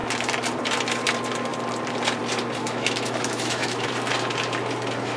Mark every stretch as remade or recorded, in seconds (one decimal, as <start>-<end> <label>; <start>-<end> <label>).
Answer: 0.0-2.6 recorded; 2.6-3.9 remade; 3.9-5.2 recorded